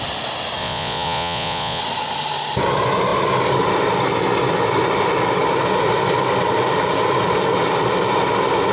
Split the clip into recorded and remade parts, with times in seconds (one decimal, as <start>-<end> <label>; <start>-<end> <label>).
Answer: 0.0-0.6 recorded; 0.6-1.8 remade; 1.8-8.7 recorded